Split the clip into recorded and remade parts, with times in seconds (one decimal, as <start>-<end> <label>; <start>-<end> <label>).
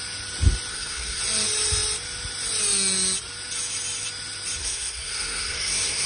0.0-0.7 recorded; 0.7-1.2 remade; 1.2-4.6 recorded; 4.6-6.1 remade